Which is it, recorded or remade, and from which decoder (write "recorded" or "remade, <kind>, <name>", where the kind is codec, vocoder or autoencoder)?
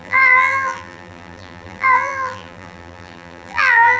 remade, vocoder, BigVGAN v2